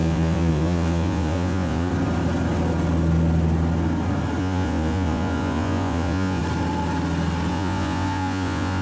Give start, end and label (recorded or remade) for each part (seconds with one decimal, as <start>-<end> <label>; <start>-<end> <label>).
0.0-1.9 remade; 1.9-4.4 recorded; 4.4-6.4 remade; 6.4-7.5 recorded; 7.5-8.8 remade